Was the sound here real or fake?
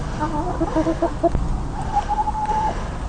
real